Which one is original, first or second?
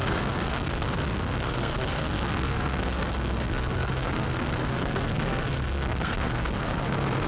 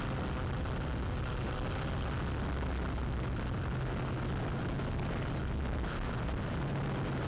second